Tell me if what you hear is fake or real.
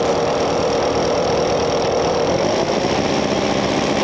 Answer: real